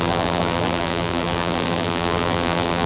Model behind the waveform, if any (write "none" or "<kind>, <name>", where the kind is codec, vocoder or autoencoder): vocoder, BigVGAN v2